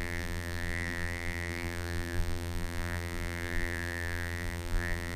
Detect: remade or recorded remade